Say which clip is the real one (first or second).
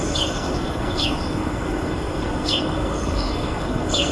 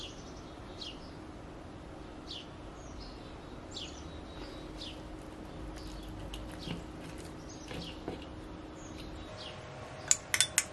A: second